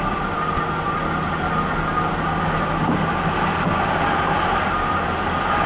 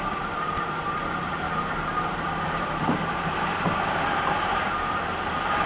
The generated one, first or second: second